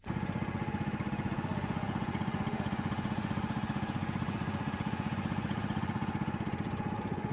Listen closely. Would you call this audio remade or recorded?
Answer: remade